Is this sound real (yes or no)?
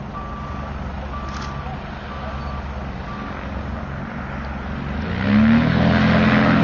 yes